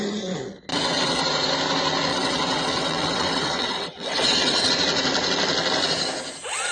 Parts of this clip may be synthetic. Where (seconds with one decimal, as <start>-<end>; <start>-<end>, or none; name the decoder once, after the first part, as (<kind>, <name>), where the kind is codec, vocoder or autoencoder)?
0.7-1.2 (vocoder, WaveNeXt); 2.1-4.7